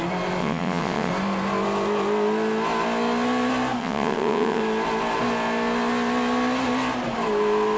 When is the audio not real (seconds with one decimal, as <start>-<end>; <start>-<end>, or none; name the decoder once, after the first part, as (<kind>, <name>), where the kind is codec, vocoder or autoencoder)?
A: 0.4-1.1 (vocoder, WaveNeXt); 3.8-4.6